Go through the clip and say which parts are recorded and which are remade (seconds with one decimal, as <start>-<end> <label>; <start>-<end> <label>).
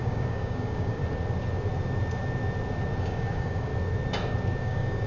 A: 0.0-1.0 remade; 1.0-3.0 recorded; 3.0-3.7 remade; 3.7-4.6 recorded; 4.6-5.1 remade